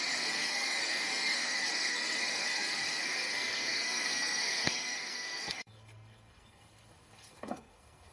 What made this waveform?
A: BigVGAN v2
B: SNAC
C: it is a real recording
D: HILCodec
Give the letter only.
B